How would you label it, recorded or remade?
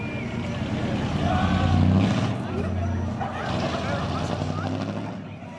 recorded